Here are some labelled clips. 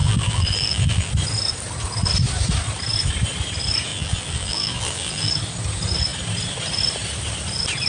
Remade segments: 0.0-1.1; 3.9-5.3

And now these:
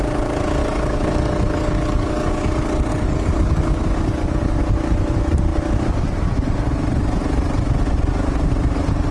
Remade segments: 0.6-2.5; 2.9-4.6

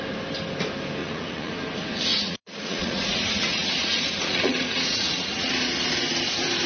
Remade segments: 1.0-1.5; 2.1-5.5

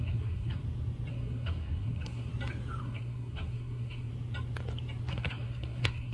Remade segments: 0.0-0.6; 1.1-2.3; 2.8-4.1; 5.1-6.1

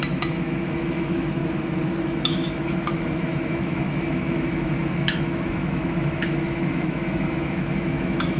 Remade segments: 0.0-1.4; 2.0-8.4

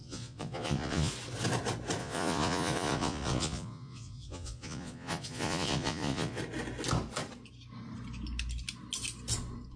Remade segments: 0.0-1.1; 2.0-6.4

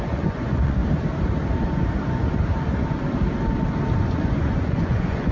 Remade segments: 0.0-0.8; 4.0-5.3